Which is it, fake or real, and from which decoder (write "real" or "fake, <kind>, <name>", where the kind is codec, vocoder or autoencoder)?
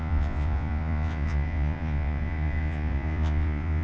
fake, vocoder, Vocos